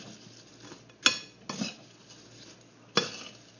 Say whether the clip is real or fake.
real